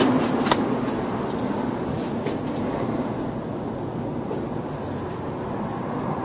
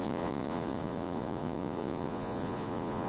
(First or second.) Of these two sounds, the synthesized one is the second